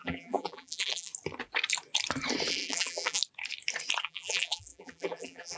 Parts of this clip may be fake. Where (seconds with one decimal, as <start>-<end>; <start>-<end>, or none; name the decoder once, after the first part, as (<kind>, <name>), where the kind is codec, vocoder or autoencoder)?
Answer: 0.0-1.1 (vocoder, BigVGAN v2); 2.5-3.2; 4.0-5.6